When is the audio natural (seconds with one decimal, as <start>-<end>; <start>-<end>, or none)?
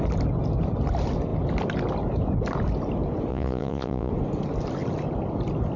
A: 0.0-3.3; 4.1-5.8